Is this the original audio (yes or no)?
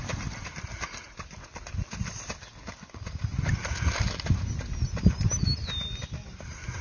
yes